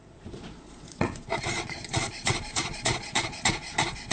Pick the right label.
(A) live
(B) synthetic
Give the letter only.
B